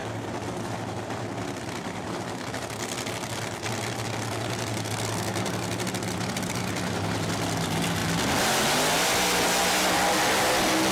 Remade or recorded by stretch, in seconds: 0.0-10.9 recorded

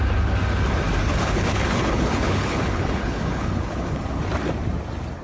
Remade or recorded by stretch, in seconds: 0.0-1.1 recorded; 1.1-4.2 remade; 4.2-5.2 recorded

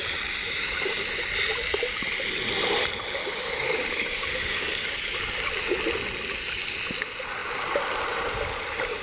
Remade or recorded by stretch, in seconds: 0.0-0.4 recorded; 0.4-1.0 remade; 1.0-3.2 recorded; 3.2-5.2 remade; 5.2-9.0 recorded

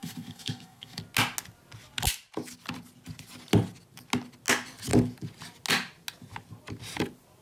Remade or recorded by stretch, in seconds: 0.0-1.0 remade; 1.0-7.4 recorded

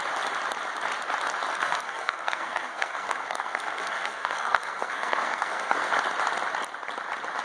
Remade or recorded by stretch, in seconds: 0.0-1.5 recorded; 1.5-5.9 remade; 5.9-7.4 recorded

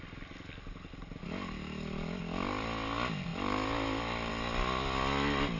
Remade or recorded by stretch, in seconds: 0.0-5.6 recorded